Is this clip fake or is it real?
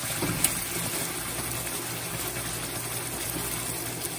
real